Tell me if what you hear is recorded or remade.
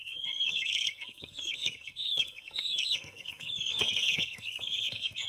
remade